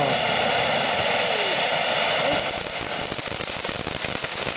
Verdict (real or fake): real